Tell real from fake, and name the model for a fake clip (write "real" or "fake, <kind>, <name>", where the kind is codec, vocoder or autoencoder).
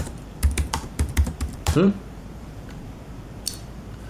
fake, vocoder, BigVGAN v2